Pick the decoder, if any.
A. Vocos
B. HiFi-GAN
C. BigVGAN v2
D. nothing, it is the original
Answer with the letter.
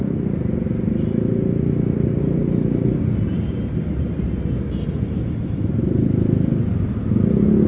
D